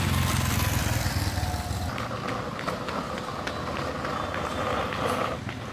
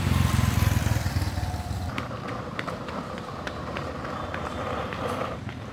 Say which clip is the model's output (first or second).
second